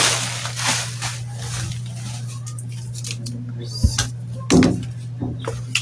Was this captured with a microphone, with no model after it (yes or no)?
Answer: yes